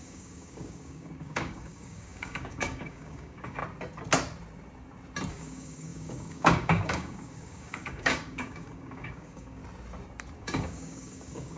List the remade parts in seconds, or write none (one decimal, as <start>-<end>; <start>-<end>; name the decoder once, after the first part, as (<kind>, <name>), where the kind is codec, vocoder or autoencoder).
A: 0.0-3.6 (codec, DAC); 5.3-9.6; 10.4-11.6